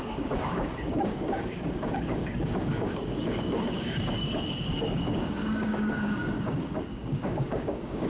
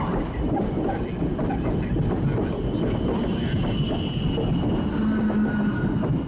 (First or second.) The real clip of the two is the second